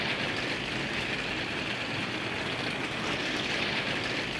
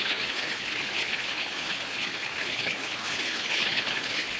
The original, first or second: first